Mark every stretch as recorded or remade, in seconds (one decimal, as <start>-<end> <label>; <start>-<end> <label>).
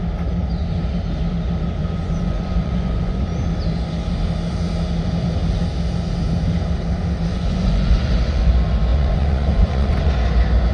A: 0.0-1.8 recorded; 1.8-3.2 remade; 3.2-7.3 recorded; 7.3-8.5 remade; 8.5-8.9 recorded; 8.9-10.1 remade; 10.1-10.7 recorded